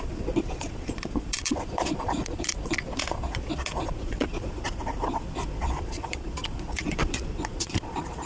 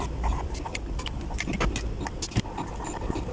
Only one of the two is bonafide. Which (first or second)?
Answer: second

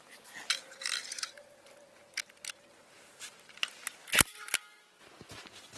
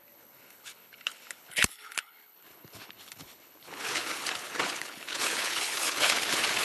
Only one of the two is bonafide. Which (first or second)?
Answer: first